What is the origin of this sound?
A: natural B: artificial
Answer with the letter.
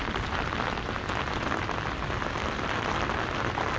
A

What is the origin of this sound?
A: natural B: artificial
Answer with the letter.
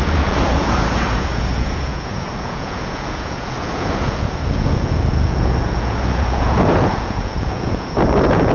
B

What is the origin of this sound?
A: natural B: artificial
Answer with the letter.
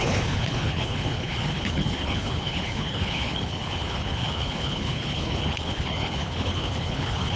B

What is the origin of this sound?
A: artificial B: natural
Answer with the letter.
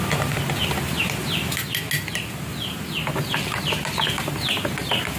B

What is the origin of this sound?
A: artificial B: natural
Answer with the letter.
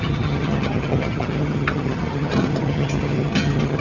A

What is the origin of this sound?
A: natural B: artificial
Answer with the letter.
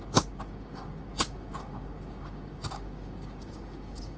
B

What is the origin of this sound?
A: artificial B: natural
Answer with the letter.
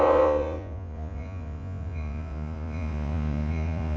A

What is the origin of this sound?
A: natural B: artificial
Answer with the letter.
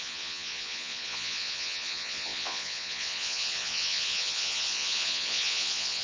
B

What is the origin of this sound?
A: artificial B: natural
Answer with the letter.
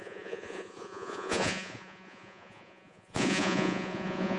A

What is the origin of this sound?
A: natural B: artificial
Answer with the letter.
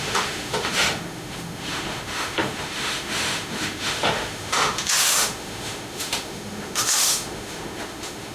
B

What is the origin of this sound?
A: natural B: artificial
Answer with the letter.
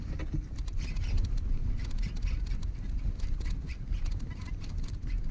A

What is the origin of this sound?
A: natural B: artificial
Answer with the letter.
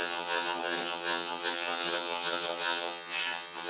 B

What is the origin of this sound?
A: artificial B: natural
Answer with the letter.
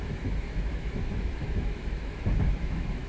A